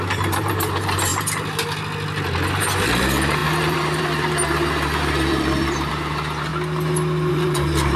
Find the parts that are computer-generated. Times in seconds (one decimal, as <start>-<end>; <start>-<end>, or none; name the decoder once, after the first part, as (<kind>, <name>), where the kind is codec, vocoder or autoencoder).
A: 0.0-1.1 (vocoder, BigVGAN v2); 2.5-6.5; 7.3-8.0